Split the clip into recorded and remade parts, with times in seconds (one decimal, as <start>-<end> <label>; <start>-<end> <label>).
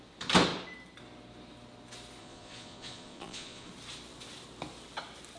0.0-2.2 recorded; 2.2-3.7 remade; 3.7-5.4 recorded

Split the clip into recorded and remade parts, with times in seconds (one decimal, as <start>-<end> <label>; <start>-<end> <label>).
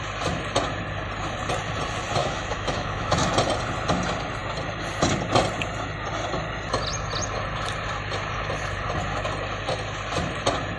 0.0-2.2 recorded; 2.2-3.3 remade; 3.3-10.8 recorded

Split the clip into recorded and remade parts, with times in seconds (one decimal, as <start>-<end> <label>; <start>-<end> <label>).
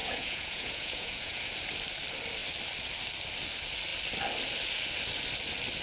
0.0-1.5 remade; 1.5-5.8 recorded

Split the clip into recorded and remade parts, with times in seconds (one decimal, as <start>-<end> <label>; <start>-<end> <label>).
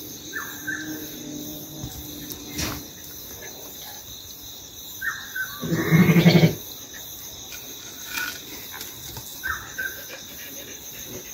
0.0-1.5 recorded; 1.5-2.0 remade; 2.0-11.3 recorded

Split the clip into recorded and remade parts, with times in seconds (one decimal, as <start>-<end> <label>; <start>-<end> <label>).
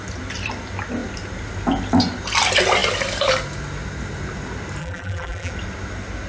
0.0-4.8 recorded; 4.8-5.5 remade; 5.5-6.3 recorded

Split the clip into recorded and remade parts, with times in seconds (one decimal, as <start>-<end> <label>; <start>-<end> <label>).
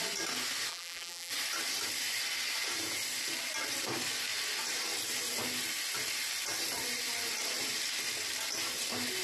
0.0-0.7 recorded; 0.7-1.3 remade; 1.3-9.2 recorded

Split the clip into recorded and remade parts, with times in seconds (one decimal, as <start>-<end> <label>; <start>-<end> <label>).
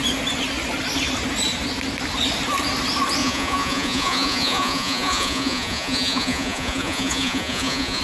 0.0-3.2 recorded; 3.2-8.0 remade